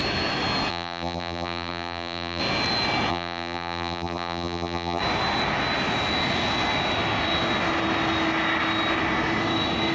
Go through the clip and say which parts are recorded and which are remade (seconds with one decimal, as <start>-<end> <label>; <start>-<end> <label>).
0.0-0.7 recorded; 0.7-2.4 remade; 2.4-3.1 recorded; 3.1-5.0 remade; 5.0-9.9 recorded